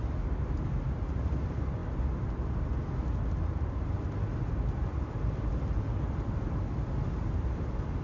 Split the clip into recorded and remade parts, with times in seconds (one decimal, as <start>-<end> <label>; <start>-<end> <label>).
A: 0.0-4.8 recorded; 4.8-6.6 remade; 6.6-8.0 recorded